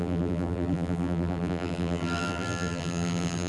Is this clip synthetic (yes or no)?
yes